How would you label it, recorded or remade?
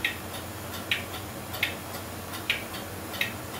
recorded